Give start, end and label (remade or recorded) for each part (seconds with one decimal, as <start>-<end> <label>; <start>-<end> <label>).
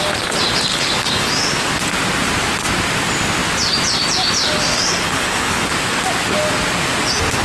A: 0.0-0.7 recorded; 0.7-1.3 remade; 1.3-4.7 recorded; 4.7-5.7 remade; 5.7-7.4 recorded